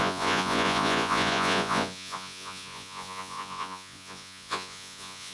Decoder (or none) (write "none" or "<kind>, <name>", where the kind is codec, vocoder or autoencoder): vocoder, Vocos